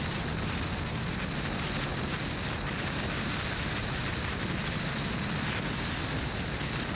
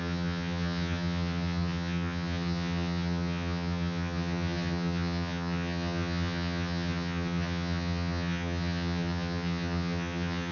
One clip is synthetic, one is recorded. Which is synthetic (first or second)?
second